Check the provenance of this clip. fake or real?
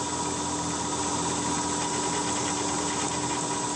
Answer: real